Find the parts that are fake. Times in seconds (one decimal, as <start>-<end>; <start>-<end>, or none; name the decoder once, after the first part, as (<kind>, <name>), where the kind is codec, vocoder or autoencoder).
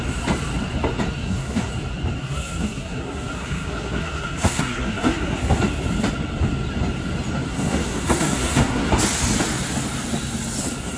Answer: 1.2-1.7 (codec, SNAC); 2.2-5.6; 7.5-8.9